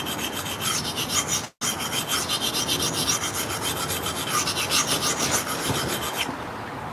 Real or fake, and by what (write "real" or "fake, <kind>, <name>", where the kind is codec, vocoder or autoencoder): real